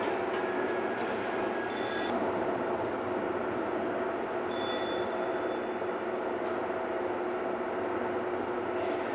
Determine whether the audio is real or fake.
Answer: real